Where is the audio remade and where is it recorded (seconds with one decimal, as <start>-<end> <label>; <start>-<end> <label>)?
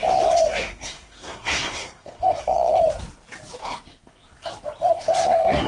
0.0-0.5 recorded; 0.5-2.8 remade; 2.8-3.6 recorded; 3.6-4.5 remade; 4.5-4.9 recorded; 4.9-5.7 remade